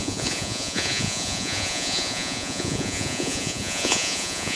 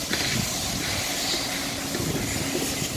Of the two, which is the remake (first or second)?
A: first